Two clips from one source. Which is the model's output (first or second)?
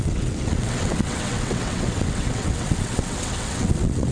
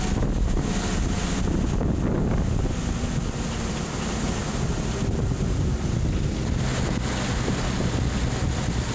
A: first